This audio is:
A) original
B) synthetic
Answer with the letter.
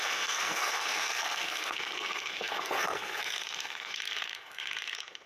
B